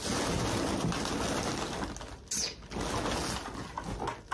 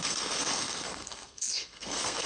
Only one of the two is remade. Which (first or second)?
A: second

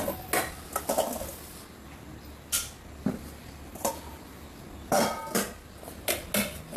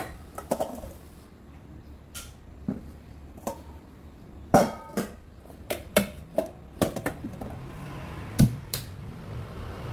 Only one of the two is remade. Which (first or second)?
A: second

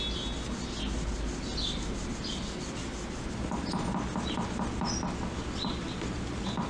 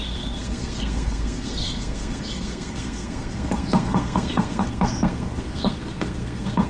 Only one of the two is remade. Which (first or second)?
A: second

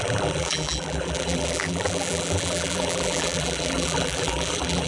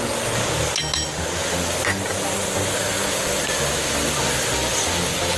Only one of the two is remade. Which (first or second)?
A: first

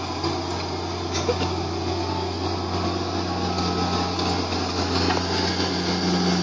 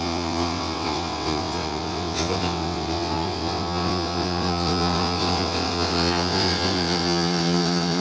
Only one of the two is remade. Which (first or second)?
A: second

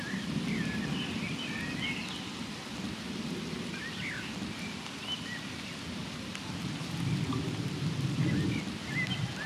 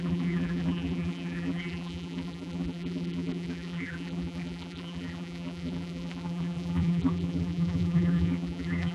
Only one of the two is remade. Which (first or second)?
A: second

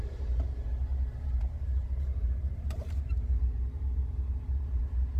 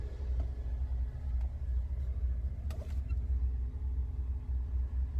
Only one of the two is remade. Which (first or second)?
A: first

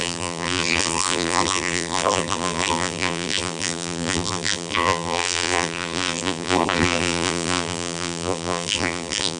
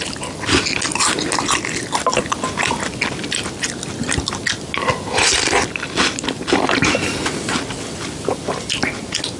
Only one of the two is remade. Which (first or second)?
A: first